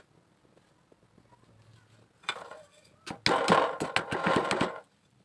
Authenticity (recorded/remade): recorded